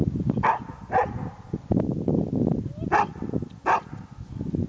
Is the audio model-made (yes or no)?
no